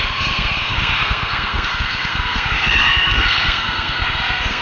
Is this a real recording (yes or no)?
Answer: no